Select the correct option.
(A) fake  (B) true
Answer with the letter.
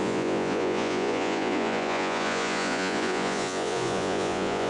A